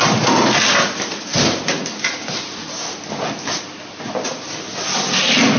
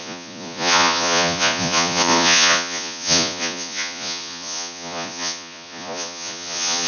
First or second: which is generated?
second